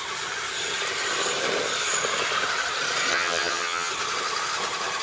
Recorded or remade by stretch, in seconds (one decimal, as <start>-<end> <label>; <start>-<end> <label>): 0.0-3.1 recorded; 3.1-3.9 remade; 3.9-5.0 recorded